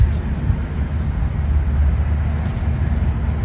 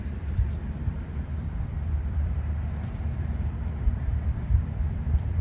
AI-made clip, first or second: second